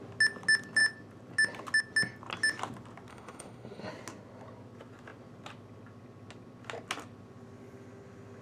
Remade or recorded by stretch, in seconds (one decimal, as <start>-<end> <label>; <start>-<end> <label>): 0.0-3.1 recorded; 3.1-3.9 remade; 3.9-8.4 recorded